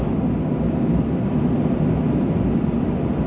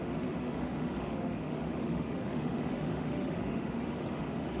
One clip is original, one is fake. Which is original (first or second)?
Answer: first